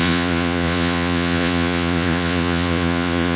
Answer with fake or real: fake